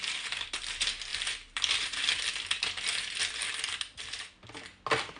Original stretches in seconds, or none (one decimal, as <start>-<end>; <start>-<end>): 0.0-1.1; 2.1-5.2

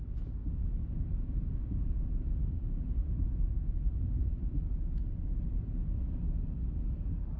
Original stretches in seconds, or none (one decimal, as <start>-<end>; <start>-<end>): 0.0-0.8; 4.6-7.4

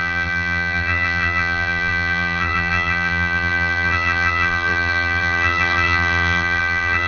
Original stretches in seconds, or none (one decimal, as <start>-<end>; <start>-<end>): none